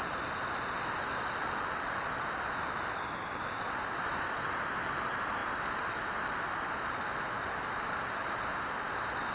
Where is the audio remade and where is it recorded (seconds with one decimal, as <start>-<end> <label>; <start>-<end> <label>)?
0.0-9.3 recorded